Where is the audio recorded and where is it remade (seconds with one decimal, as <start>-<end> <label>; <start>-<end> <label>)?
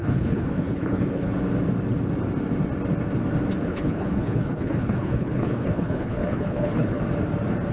0.0-1.3 remade; 1.3-3.7 recorded; 3.7-7.0 remade; 7.0-7.7 recorded